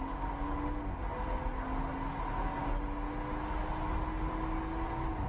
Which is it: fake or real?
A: real